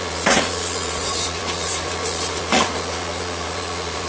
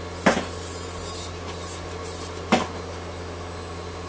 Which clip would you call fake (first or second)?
first